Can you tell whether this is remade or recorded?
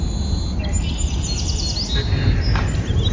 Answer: recorded